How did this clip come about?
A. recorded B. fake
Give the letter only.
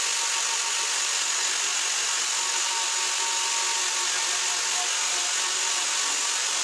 A